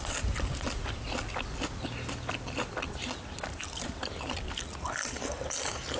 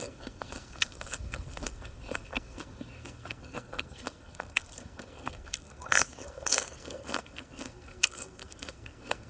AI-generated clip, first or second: second